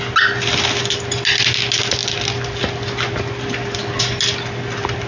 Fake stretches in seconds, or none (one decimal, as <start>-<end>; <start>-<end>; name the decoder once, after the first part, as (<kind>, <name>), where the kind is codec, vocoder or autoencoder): none